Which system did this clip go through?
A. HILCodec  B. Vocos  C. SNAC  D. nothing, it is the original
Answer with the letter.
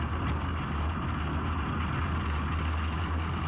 D